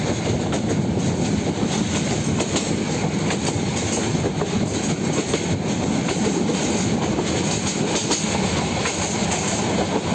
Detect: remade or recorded recorded